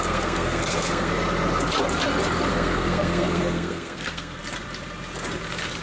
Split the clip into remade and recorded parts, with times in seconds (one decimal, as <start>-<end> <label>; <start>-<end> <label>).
0.0-1.1 remade; 1.1-2.5 recorded; 2.5-4.4 remade; 4.4-5.8 recorded